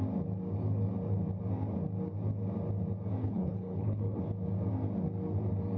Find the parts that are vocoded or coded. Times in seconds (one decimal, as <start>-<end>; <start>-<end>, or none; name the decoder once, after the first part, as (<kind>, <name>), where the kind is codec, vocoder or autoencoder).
3.2-4.2 (codec, HILCodec)